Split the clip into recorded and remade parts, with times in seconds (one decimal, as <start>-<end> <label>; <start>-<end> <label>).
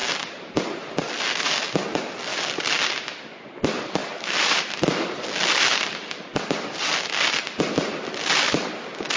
0.0-0.6 remade; 0.6-2.3 recorded; 2.3-2.9 remade; 2.9-4.0 recorded; 4.0-8.7 remade; 8.7-9.2 recorded